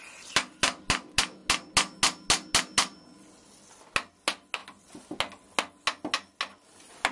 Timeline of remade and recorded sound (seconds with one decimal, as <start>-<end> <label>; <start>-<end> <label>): 0.0-7.1 recorded